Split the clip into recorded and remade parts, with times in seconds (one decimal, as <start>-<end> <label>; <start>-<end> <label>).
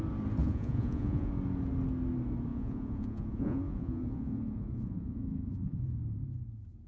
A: 0.0-0.4 recorded; 0.4-1.3 remade; 1.3-2.5 recorded; 2.5-6.0 remade; 6.0-6.9 recorded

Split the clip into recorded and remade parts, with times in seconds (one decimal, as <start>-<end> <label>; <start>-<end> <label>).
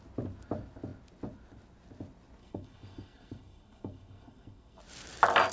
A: 0.0-2.4 recorded; 2.4-4.8 remade; 4.8-5.5 recorded